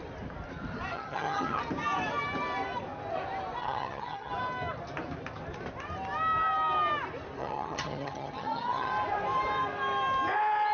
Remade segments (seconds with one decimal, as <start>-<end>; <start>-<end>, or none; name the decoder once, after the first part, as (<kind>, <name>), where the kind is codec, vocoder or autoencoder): 0.9-1.6 (vocoder, HiFi-GAN); 3.6-4.3; 7.4-8.9